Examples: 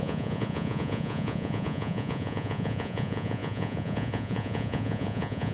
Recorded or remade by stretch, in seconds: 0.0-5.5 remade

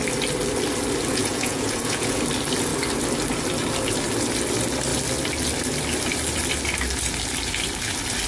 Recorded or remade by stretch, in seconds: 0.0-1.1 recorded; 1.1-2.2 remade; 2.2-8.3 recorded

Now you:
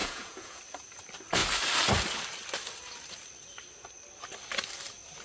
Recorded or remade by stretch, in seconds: 0.0-0.6 remade; 0.6-5.2 recorded